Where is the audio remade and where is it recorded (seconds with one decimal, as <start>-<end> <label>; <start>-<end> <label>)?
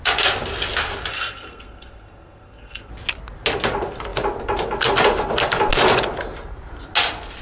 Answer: 0.0-1.1 recorded; 1.1-2.9 remade; 2.9-7.4 recorded